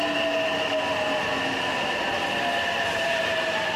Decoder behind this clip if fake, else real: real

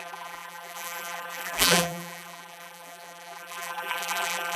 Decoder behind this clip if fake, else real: fake, vocoder, BigVGAN v2